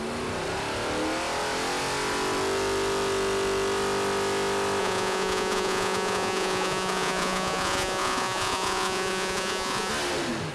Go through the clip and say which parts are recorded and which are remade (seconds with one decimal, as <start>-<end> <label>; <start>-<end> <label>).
0.0-4.8 recorded; 4.8-9.9 remade; 9.9-10.5 recorded